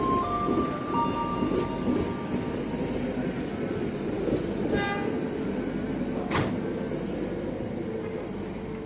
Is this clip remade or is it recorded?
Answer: recorded